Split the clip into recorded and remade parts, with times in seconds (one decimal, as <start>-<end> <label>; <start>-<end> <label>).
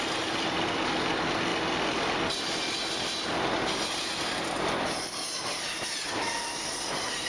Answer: 0.0-7.3 recorded